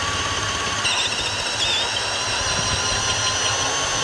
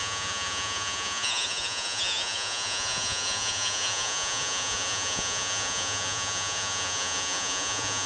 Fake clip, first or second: second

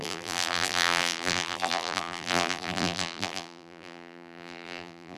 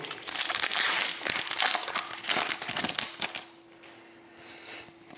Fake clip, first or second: first